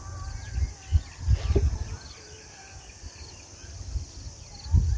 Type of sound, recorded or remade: recorded